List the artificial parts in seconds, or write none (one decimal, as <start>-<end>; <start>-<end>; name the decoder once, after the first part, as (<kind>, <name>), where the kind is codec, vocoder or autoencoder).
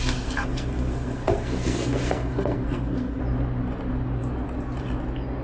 0.0-3.2 (codec, SNAC)